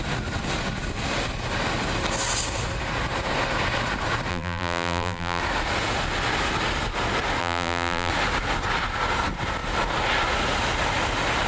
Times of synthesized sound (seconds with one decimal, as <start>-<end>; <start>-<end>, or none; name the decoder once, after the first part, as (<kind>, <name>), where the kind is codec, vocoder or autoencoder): 4.3-5.4 (vocoder, BigVGAN v2); 7.4-8.1